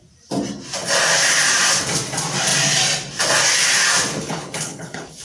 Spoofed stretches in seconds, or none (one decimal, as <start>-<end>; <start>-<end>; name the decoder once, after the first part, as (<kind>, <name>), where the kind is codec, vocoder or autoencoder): 4.2-5.2 (codec, HILCodec)